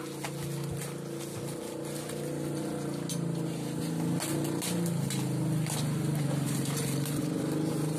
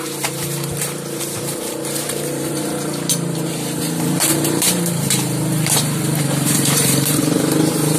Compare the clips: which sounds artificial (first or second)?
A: second